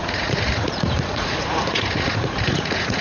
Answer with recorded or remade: remade